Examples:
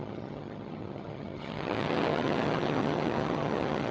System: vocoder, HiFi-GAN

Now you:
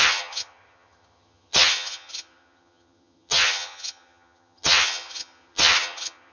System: vocoder, HiFi-GAN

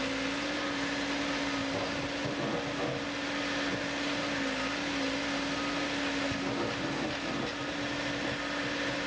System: none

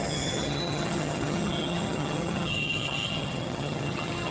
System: vocoder, HiFi-GAN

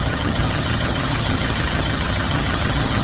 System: vocoder, HiFi-GAN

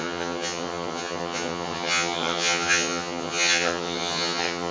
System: vocoder, HiFi-GAN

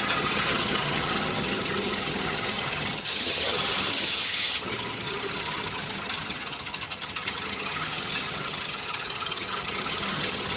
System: vocoder, HiFi-GAN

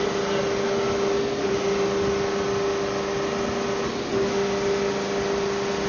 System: none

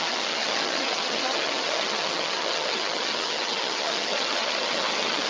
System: vocoder, HiFi-GAN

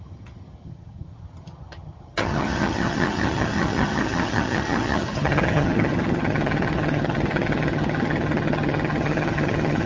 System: vocoder, HiFi-GAN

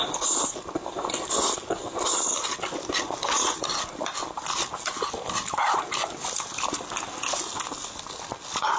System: none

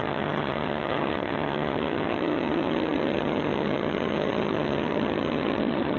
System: vocoder, HiFi-GAN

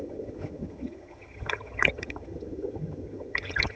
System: vocoder, HiFi-GAN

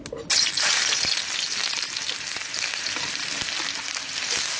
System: none